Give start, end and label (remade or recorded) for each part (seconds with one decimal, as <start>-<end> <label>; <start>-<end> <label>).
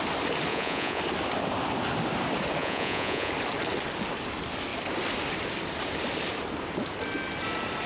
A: 0.0-0.5 recorded; 0.5-1.0 remade; 1.0-2.6 recorded; 2.6-3.3 remade; 3.3-7.9 recorded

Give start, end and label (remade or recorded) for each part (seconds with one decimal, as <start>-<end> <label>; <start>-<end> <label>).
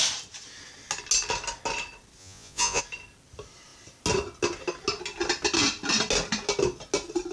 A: 0.0-2.2 recorded; 2.2-2.8 remade; 2.8-7.3 recorded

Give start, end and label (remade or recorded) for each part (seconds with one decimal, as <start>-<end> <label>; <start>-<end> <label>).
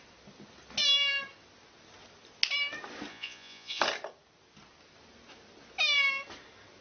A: 0.0-3.1 recorded; 3.1-3.8 remade; 3.8-6.8 recorded